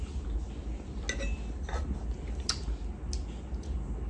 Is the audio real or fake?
real